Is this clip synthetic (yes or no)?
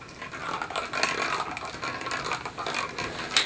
no